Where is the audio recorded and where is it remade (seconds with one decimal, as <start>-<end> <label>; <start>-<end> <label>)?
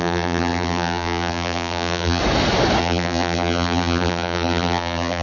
0.0-2.2 remade; 2.2-2.8 recorded; 2.8-5.2 remade